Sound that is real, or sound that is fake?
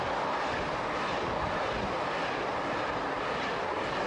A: real